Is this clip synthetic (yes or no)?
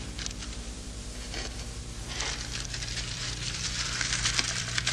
yes